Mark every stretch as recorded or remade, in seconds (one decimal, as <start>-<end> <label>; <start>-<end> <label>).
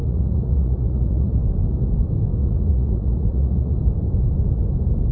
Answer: 0.0-1.3 remade; 1.3-2.4 recorded; 2.4-3.8 remade; 3.8-5.1 recorded